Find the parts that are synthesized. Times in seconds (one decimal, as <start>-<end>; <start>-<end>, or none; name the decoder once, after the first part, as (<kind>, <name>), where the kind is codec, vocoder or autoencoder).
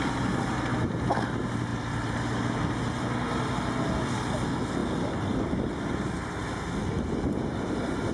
none